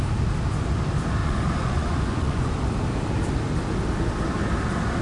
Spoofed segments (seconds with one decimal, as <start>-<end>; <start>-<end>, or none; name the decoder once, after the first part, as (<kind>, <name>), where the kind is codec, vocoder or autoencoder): 1.2-2.6 (vocoder, Vocos)